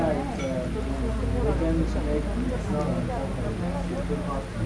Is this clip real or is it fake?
real